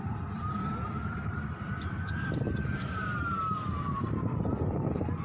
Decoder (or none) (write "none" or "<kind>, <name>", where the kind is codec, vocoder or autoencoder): vocoder, BigVGAN v2